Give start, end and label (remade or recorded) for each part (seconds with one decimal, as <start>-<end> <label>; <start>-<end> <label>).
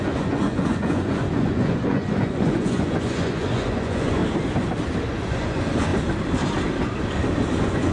0.0-4.2 remade; 4.2-5.1 recorded; 5.1-5.9 remade; 5.9-7.5 recorded; 7.5-7.9 remade